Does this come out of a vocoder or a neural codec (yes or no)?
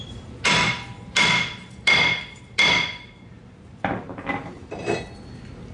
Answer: yes